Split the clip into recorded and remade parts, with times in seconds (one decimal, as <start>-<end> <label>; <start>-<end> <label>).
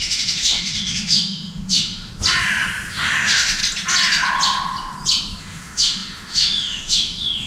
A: 0.0-2.1 remade; 2.1-2.9 recorded; 2.9-3.6 remade; 3.6-5.4 recorded; 5.4-7.5 remade